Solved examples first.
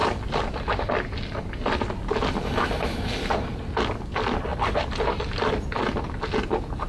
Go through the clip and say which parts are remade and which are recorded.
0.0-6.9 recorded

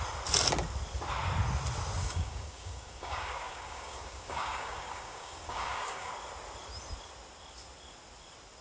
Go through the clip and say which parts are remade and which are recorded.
0.0-2.0 recorded; 2.0-6.1 remade; 6.1-8.6 recorded

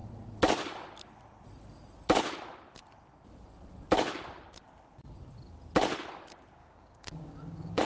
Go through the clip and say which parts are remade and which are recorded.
0.0-6.6 recorded; 6.6-7.8 remade

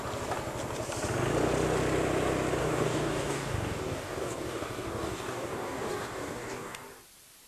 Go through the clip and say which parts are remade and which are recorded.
0.0-2.6 recorded; 2.6-6.8 remade; 6.8-7.5 recorded

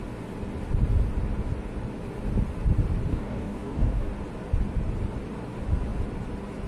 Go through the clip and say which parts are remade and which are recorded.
0.0-3.1 recorded; 3.1-4.1 remade; 4.1-6.7 recorded

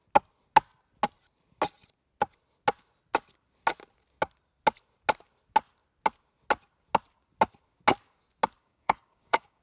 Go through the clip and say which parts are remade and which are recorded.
0.0-8.6 recorded; 8.6-9.6 remade